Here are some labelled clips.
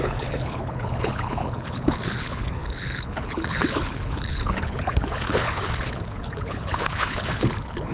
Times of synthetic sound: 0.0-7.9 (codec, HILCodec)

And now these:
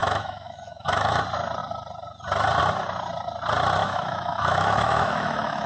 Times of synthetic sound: 0.0-1.2 (autoencoder, DAC-VAE); 3.8-5.7

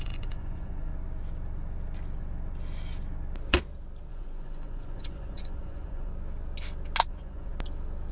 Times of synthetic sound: 0.0-0.9 (vocoder, Vocos); 4.1-6.1; 7.1-7.5

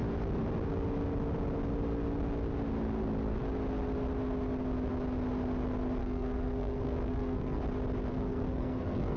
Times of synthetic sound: 6.0-7.6 (codec, SNAC); 8.1-9.2

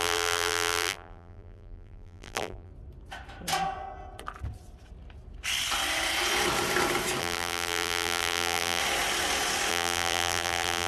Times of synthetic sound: 0.0-2.7 (vocoder, BigVGAN v2); 7.2-8.8; 9.7-10.9